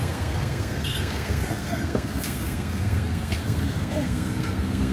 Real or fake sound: fake